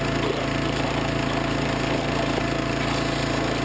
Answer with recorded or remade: remade